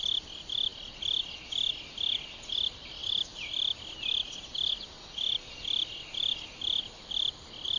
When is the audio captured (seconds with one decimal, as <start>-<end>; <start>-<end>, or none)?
0.0-7.8